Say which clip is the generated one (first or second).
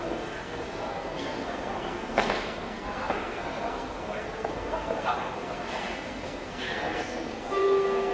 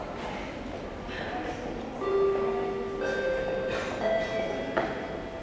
first